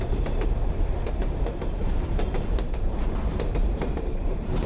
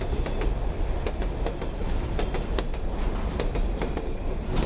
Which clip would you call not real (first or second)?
first